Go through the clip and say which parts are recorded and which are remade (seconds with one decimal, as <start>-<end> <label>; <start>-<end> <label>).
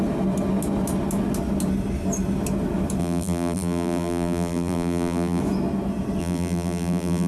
0.0-3.0 recorded; 3.0-5.4 remade; 5.4-6.2 recorded; 6.2-7.3 remade